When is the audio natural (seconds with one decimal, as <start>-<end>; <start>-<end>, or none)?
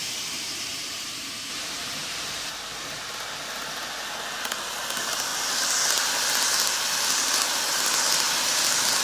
2.5-9.0